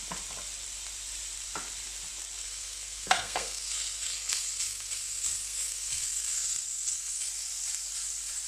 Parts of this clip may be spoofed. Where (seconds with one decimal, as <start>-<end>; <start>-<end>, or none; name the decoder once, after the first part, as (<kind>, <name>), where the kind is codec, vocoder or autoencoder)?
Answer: 2.4-7.3 (codec, SNAC)